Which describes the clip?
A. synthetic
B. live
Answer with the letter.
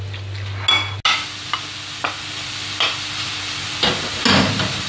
B